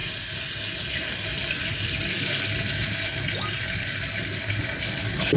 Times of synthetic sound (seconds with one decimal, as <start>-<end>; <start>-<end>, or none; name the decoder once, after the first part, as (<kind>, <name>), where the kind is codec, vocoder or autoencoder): none